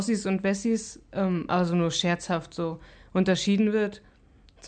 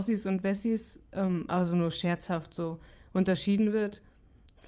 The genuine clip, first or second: first